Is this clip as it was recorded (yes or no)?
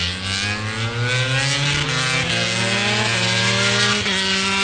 yes